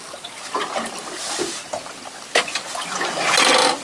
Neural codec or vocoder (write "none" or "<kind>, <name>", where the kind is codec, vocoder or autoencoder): none